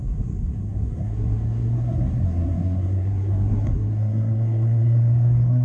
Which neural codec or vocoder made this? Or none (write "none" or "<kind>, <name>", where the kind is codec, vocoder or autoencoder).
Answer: codec, SNAC